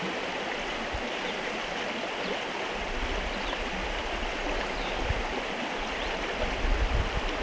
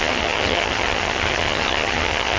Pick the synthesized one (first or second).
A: second